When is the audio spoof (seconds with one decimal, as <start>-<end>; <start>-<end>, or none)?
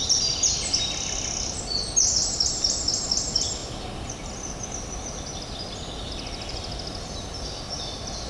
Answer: none